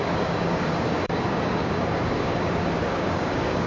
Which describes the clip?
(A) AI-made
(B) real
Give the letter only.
A